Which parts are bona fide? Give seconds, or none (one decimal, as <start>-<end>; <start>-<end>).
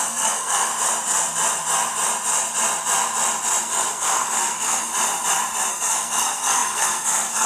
0.7-3.6; 4.9-5.7